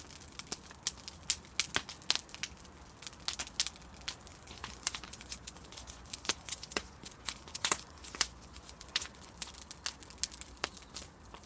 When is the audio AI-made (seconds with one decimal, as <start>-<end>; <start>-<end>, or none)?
4.3-9.5

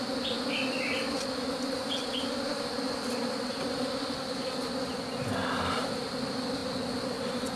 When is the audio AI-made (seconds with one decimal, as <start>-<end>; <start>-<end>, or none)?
none